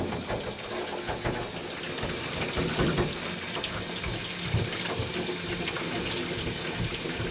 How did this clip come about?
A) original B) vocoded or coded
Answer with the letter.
A